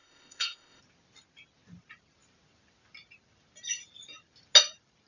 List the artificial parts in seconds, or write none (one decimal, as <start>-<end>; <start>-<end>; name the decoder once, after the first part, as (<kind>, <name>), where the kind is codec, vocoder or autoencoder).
0.0-0.8 (codec, ZipCodec)